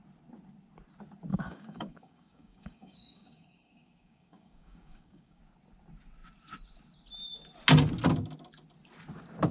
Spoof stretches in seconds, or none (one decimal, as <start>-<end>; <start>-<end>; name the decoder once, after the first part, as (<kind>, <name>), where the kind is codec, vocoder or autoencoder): 1.3-5.4 (codec, DAC)